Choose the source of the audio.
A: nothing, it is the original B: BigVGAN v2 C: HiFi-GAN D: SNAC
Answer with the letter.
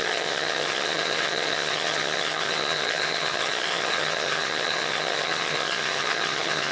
C